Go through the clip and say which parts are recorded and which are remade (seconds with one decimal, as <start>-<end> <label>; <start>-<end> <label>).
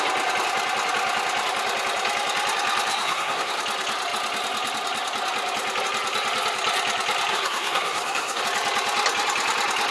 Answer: 0.0-2.9 recorded; 2.9-3.5 remade; 3.5-7.3 recorded; 7.3-8.4 remade; 8.4-9.9 recorded